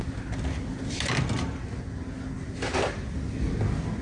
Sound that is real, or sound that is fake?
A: real